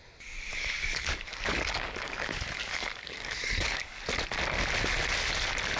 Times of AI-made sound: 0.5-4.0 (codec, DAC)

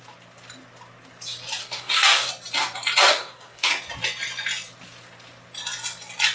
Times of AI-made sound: 1.6-2.3 (codec, DAC); 3.1-3.7

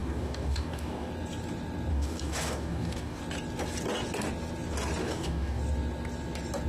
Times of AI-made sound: 0.0-1.1 (codec, DAC); 1.9-3.2; 5.0-5.6

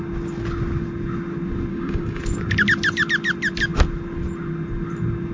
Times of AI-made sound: 1.7-2.2 (codec, DAC)

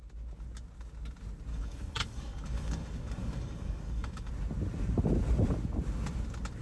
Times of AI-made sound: 1.5-4.3 (codec, DAC)

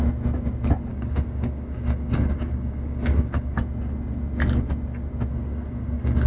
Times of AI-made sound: 0.9-3.6 (codec, DAC); 5.3-6.3

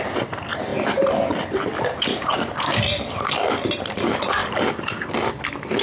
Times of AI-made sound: 2.1-2.8 (codec, DAC)